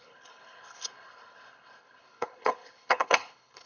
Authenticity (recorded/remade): remade